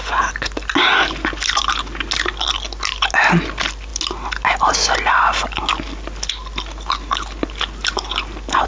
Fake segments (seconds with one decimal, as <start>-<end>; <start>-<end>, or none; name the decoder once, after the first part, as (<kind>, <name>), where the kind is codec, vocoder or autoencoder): none